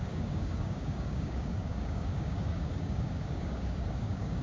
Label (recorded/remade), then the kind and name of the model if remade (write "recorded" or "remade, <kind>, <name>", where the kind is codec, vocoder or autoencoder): remade, codec, DAC